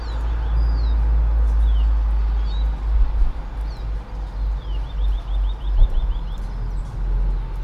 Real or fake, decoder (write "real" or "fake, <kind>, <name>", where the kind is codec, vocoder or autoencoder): real